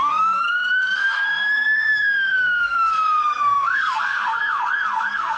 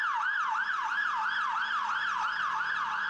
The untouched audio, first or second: second